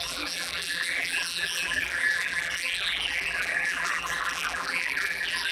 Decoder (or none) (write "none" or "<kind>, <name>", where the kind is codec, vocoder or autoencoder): vocoder, BigVGAN v2